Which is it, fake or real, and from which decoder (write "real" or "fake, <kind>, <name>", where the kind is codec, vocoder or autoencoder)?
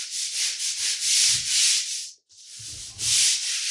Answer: real